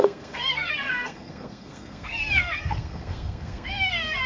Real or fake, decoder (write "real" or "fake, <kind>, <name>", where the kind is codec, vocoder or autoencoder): fake, codec, SNAC